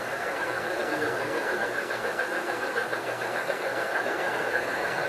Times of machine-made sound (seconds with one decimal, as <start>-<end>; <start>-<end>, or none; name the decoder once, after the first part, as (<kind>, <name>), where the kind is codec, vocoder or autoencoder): 0.0-5.1 (codec, SNAC)

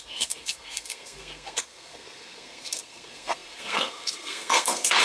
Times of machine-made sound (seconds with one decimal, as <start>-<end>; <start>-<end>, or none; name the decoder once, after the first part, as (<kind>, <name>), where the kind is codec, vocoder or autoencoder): 0.0-5.0 (codec, SNAC)

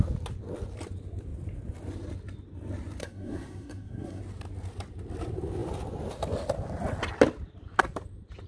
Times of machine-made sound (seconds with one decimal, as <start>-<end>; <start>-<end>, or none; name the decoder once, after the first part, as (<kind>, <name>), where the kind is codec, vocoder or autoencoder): 3.0-4.2 (codec, SNAC)

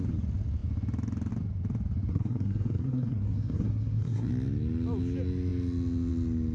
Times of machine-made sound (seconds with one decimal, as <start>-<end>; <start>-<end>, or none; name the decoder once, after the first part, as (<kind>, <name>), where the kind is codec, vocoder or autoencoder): 2.1-4.3 (codec, SNAC)

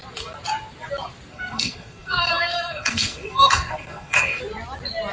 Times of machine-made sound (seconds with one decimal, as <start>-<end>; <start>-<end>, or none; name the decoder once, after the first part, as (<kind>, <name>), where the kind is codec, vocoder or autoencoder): 1.3-4.4 (codec, SNAC)

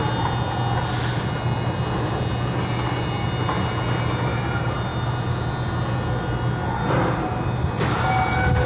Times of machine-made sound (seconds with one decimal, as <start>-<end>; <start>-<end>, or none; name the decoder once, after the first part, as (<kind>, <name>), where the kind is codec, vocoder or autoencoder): none

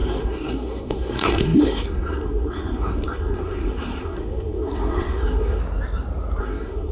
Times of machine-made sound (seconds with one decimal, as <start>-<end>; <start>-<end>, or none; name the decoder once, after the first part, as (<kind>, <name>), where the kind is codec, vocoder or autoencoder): 0.0-5.6 (codec, SNAC); 6.4-6.9